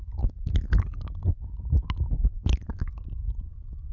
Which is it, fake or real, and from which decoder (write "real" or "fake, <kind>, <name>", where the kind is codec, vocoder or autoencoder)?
fake, vocoder, BigVGAN v2